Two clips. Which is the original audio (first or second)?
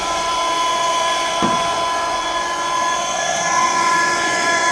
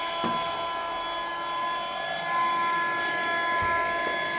second